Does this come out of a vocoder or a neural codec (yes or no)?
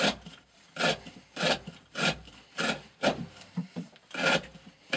yes